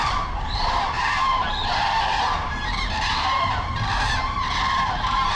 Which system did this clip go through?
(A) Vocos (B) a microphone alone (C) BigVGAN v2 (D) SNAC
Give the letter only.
C